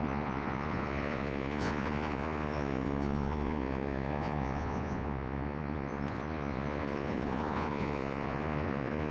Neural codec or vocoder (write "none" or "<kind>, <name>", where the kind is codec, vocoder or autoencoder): vocoder, Vocos